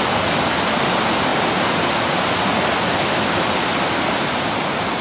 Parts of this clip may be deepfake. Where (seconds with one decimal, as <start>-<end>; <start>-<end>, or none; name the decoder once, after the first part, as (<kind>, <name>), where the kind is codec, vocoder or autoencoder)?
none